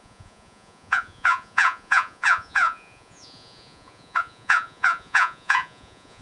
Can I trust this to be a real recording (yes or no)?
no